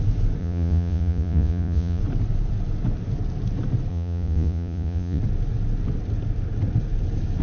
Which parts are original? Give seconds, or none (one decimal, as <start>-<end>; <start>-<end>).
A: 0.0-0.4; 2.0-3.9; 5.2-7.4